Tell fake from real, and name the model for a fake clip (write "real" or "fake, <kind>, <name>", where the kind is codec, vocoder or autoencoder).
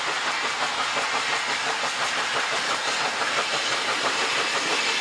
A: real